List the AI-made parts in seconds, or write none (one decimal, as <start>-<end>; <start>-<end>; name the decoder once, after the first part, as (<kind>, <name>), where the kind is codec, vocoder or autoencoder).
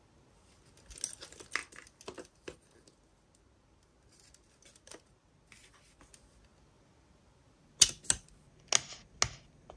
none